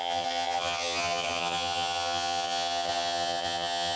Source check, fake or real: fake